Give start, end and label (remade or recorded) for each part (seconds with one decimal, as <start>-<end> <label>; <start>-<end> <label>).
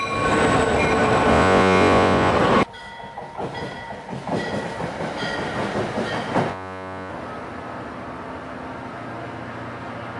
0.0-1.3 recorded; 1.3-2.3 remade; 2.3-6.5 recorded; 6.5-7.1 remade; 7.1-10.2 recorded